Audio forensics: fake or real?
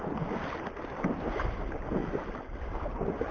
real